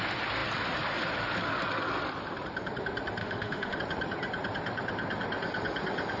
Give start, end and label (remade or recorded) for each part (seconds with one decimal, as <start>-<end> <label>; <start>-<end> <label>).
0.0-3.2 recorded; 3.2-3.8 remade; 3.8-6.2 recorded

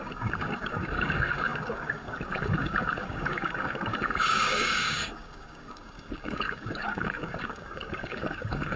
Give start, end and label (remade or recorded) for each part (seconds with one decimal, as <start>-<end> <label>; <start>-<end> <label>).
0.0-8.8 remade

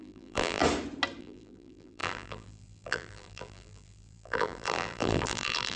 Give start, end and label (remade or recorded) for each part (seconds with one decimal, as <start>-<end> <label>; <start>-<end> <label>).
0.0-0.6 remade; 0.6-1.2 recorded; 1.2-5.8 remade

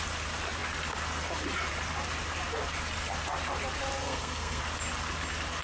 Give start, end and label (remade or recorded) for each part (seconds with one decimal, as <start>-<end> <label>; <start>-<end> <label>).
0.0-4.0 recorded; 4.0-4.6 remade; 4.6-5.6 recorded

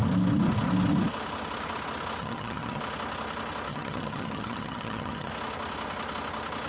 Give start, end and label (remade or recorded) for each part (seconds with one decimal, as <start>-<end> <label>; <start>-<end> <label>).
0.0-2.2 recorded; 2.2-2.8 remade; 2.8-3.7 recorded; 3.7-5.3 remade; 5.3-6.7 recorded

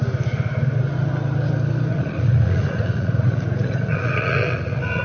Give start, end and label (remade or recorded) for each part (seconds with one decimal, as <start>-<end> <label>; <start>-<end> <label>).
0.0-1.9 recorded; 1.9-5.0 remade

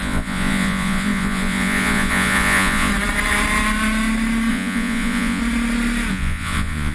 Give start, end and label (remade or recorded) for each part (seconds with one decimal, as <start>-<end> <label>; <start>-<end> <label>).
0.0-2.9 remade; 2.9-4.5 recorded; 4.5-5.4 remade; 5.4-6.1 recorded; 6.1-6.9 remade